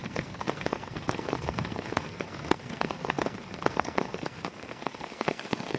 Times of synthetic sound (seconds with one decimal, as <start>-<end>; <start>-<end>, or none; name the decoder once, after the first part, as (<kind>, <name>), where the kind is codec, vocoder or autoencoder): 0.0-5.8 (codec, SNAC)

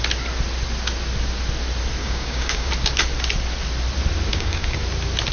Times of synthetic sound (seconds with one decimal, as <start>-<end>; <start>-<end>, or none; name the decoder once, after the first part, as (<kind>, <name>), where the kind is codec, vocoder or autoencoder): 2.0-2.7 (codec, DAC); 4.3-4.8

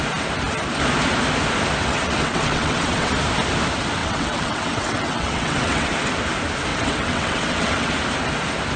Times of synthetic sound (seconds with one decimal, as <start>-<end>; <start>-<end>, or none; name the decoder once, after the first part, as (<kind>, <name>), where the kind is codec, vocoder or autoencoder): 1.8-3.1 (vocoder, WaveNeXt); 4.0-5.9; 6.7-7.9

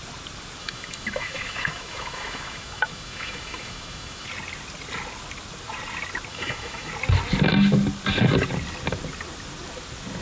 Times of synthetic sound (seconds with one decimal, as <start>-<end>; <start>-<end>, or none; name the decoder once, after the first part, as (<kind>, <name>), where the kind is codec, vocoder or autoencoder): 0.6-4.3 (autoencoder, DAC-VAE); 6.3-6.9